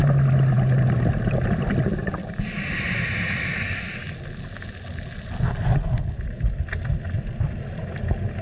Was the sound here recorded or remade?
recorded